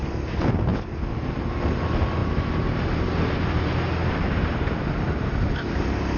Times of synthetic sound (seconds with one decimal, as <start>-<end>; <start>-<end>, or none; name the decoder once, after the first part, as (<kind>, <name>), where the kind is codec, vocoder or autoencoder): none